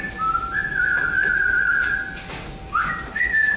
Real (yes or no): yes